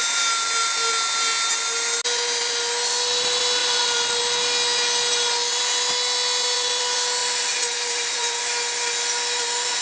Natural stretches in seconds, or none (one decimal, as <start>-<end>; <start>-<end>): 0.0-3.6; 4.2-7.2; 8.4-9.8